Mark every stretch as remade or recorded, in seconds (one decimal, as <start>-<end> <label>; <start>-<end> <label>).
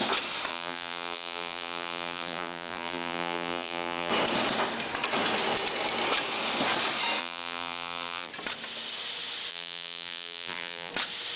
0.0-0.5 recorded; 0.5-4.1 remade; 4.1-7.2 recorded; 7.2-8.3 remade; 8.3-9.5 recorded; 9.5-10.9 remade; 10.9-11.4 recorded